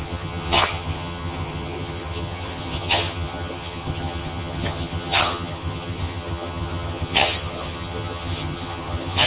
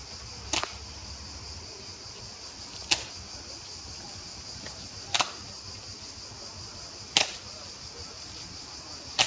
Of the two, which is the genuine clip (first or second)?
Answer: second